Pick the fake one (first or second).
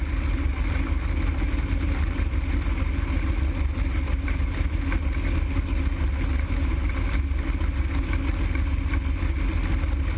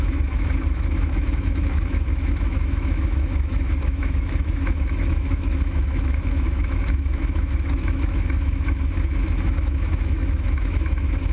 second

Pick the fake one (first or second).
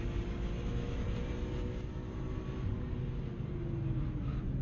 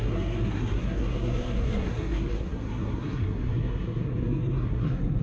second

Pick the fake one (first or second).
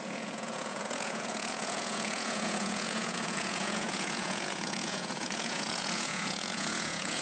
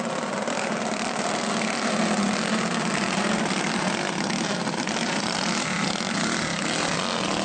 first